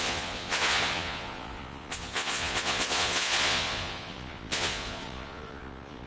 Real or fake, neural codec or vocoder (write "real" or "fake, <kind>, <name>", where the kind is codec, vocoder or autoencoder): fake, vocoder, Vocos